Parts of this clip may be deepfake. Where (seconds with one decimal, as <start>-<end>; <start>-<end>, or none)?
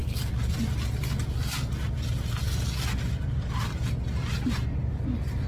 none